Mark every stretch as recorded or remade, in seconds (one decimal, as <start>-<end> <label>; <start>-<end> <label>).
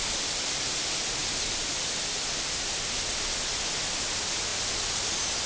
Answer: 0.0-0.6 remade; 0.6-5.5 recorded